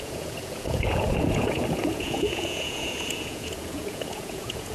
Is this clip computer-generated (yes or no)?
yes